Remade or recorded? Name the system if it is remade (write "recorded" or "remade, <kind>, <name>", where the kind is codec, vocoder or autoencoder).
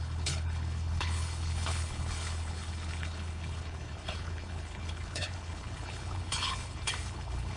remade, codec, HILCodec